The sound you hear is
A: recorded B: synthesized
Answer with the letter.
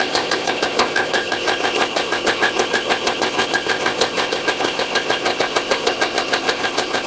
B